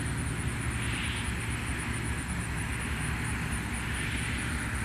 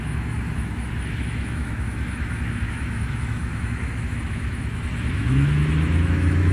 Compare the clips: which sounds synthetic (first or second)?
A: second